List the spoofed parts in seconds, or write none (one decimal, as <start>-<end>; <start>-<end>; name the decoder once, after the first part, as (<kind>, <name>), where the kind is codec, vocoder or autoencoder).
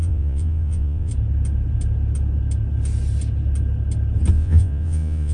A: 0.0-1.1 (vocoder, Vocos); 4.3-5.3